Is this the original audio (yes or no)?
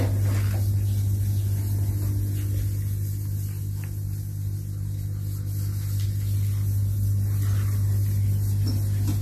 yes